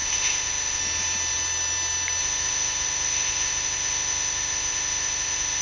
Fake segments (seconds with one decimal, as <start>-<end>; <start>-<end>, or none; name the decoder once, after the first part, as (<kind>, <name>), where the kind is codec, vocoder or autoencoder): 0.0-0.8 (autoencoder, DAC-VAE); 2.2-5.6